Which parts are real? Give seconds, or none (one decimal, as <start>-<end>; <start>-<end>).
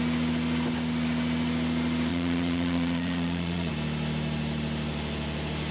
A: 0.0-2.1; 3.7-5.7